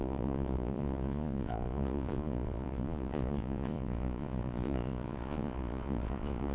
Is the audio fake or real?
fake